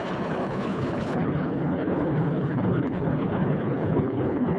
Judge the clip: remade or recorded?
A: remade